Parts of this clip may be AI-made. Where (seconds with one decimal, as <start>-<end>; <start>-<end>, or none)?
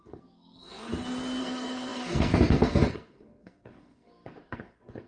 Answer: 0.0-0.9; 1.4-5.1